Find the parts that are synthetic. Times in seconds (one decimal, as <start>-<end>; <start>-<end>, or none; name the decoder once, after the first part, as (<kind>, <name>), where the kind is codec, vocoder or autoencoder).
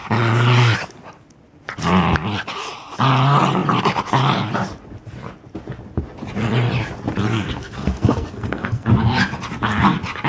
7.3-8.9 (codec, SNAC)